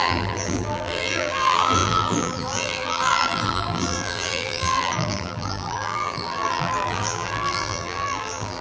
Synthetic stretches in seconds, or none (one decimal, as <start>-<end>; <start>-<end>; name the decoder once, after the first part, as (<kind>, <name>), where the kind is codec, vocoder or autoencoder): 0.0-8.6 (vocoder, BigVGAN v2)